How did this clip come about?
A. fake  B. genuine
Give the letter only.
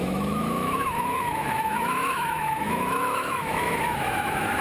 A